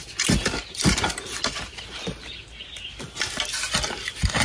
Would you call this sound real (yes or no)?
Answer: yes